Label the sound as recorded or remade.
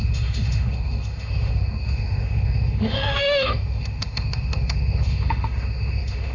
remade